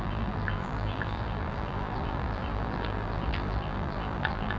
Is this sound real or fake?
fake